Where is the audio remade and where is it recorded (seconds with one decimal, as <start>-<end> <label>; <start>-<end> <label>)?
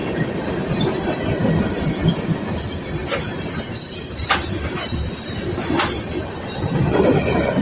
0.0-1.6 recorded; 1.6-2.0 remade; 2.0-6.6 recorded; 6.6-7.6 remade